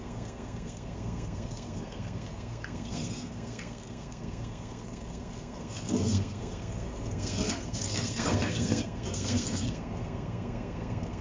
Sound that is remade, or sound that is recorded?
remade